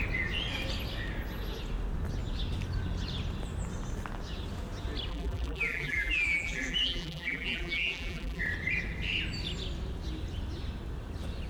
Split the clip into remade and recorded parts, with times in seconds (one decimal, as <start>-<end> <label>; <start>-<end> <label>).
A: 0.0-5.1 recorded; 5.1-8.4 remade; 8.4-11.5 recorded